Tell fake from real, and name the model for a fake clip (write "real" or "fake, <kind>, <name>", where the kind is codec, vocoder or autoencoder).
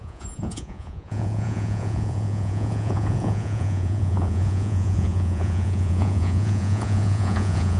fake, vocoder, Vocos